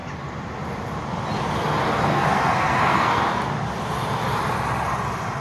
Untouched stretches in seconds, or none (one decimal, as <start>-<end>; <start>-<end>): 0.0-2.1; 3.2-5.4